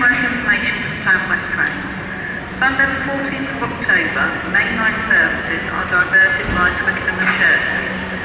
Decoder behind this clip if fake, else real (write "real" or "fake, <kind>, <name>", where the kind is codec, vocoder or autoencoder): real